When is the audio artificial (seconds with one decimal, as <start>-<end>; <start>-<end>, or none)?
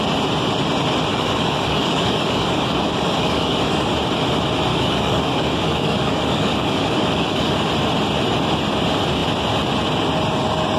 1.1-3.9; 4.7-7.7